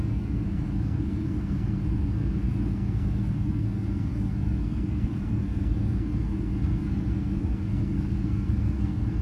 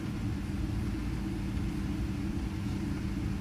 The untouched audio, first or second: second